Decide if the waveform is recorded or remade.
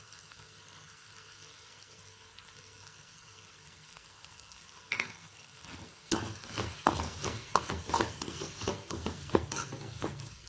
remade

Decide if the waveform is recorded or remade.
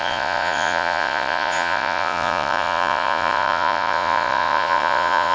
remade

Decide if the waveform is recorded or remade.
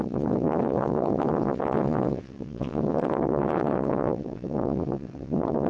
remade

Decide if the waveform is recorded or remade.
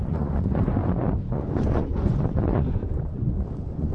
remade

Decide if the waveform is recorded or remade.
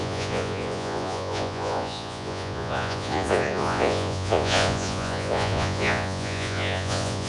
remade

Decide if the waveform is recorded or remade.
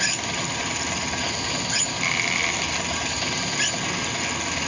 recorded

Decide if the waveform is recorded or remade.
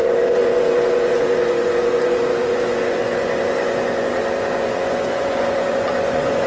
remade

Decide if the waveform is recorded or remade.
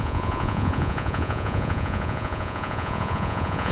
remade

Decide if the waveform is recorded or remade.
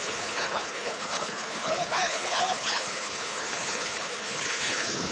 remade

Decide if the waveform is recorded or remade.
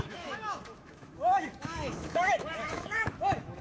remade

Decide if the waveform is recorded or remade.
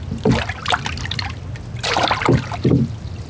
recorded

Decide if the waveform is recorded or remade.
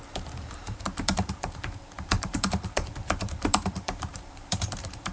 remade